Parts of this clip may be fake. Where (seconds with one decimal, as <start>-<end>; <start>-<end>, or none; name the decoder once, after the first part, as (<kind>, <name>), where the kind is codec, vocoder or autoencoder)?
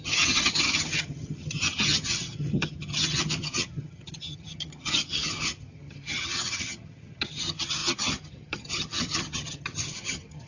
0.0-10.5 (vocoder, HiFi-GAN)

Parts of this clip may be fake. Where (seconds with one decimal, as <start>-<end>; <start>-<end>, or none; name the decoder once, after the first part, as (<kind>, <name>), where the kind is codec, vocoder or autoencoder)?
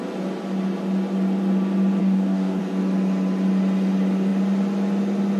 2.0-2.6 (codec, DAC)